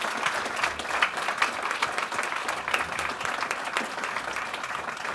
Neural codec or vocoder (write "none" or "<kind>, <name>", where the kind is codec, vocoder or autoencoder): none